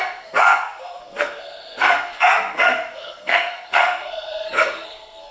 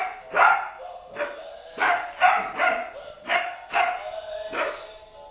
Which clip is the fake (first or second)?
first